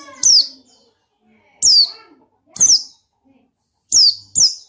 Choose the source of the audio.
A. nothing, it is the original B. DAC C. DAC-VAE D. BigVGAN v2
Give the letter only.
A